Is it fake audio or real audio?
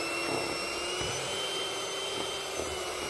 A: real